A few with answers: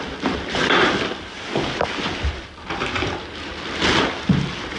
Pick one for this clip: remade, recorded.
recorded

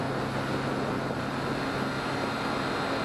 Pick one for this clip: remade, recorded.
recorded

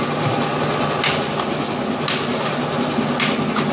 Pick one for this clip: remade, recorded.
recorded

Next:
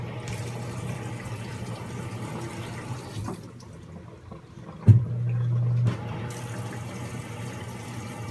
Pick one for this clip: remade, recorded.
recorded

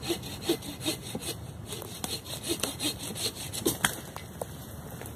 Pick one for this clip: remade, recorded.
recorded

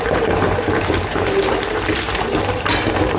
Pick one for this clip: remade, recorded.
remade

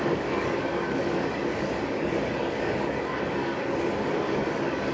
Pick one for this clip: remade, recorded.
remade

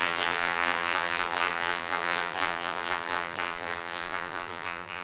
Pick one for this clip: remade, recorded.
remade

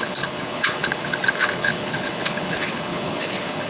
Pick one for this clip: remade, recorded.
remade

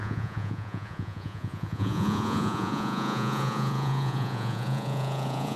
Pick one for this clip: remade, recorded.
remade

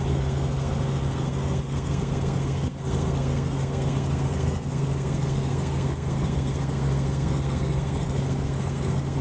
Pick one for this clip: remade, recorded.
remade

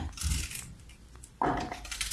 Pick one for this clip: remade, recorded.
recorded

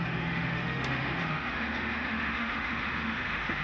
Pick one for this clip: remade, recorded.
remade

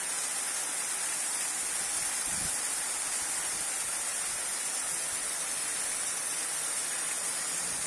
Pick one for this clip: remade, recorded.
recorded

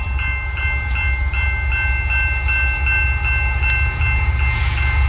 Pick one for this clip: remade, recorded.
recorded